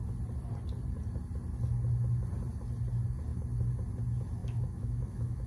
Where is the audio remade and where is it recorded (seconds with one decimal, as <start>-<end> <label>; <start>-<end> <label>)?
0.0-4.4 recorded; 4.4-5.5 remade